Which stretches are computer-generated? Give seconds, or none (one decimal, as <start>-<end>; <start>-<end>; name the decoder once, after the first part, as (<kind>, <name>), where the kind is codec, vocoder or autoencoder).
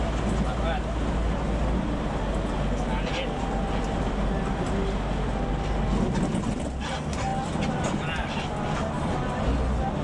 none